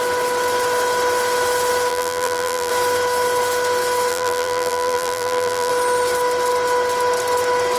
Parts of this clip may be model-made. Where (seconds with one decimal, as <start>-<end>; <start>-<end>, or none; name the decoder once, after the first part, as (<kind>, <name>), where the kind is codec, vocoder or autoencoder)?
1.9-2.7 (vocoder, BigVGAN v2); 4.1-5.7

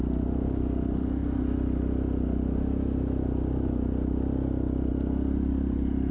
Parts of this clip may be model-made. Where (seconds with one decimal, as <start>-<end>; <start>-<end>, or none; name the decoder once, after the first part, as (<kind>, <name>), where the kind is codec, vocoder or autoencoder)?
none

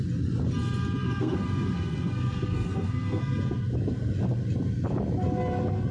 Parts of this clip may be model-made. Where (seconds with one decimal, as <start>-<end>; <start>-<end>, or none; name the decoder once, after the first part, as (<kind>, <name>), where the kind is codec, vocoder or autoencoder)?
1.0-3.2 (codec, SNAC)

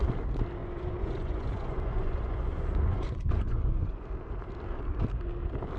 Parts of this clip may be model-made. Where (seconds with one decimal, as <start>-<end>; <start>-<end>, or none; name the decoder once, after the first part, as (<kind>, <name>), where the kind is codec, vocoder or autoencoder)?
0.6-4.1 (vocoder, Vocos)

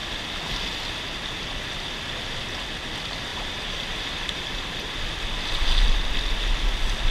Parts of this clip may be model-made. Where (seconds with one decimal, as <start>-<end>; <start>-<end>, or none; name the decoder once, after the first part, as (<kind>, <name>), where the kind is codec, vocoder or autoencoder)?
3.3-5.0 (vocoder, BigVGAN v2)

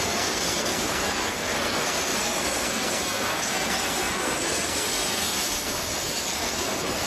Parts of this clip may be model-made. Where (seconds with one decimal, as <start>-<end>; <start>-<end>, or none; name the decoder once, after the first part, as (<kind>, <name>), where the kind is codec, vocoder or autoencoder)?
0.0-7.1 (codec, SNAC)